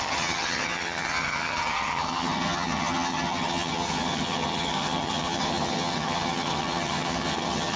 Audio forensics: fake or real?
fake